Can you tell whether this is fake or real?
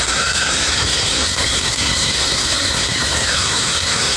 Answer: fake